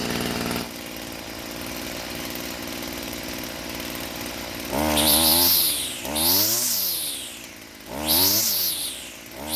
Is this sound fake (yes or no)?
no